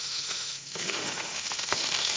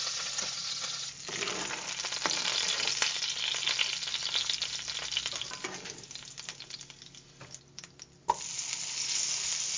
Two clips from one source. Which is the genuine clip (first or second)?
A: second